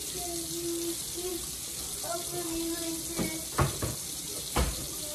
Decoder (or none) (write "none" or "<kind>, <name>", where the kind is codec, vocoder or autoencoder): none